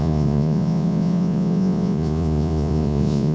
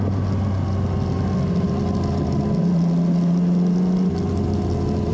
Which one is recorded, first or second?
second